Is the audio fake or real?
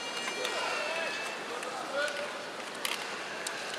real